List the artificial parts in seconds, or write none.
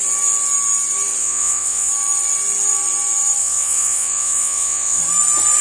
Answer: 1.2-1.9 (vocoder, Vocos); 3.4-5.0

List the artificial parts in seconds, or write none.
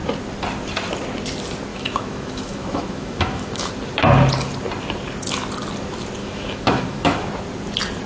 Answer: 1.7-3.7 (autoencoder, DAC-VAE); 6.2-7.3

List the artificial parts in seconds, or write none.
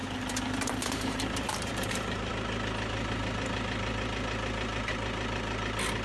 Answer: 0.0-2.3 (vocoder, BigVGAN v2)